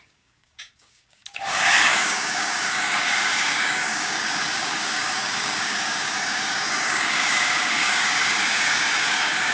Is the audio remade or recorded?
remade